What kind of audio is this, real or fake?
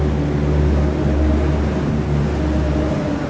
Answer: real